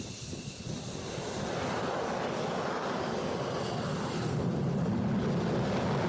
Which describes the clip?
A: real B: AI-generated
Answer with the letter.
A